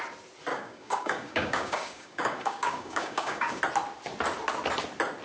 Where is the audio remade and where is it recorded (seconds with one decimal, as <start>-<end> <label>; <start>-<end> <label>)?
0.0-0.5 recorded; 0.5-3.6 remade; 3.6-5.2 recorded